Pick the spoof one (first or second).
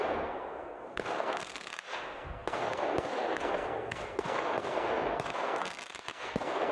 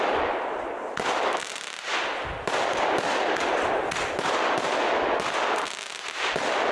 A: first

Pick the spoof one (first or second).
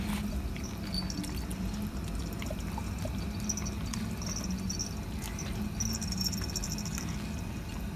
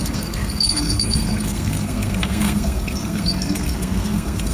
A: second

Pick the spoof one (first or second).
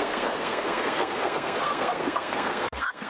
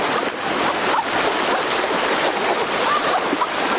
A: first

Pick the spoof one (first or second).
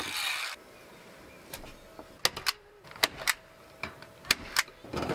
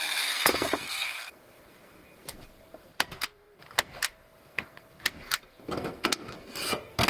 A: second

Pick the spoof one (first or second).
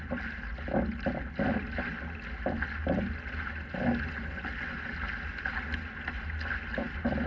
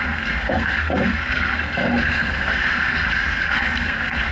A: second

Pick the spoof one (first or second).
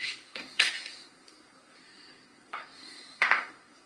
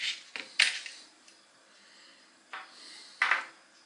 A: first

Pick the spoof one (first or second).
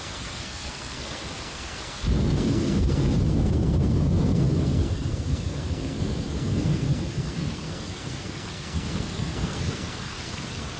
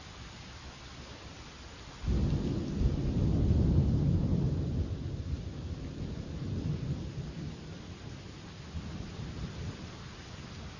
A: first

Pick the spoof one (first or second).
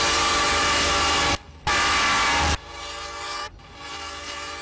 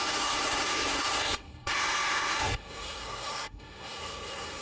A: second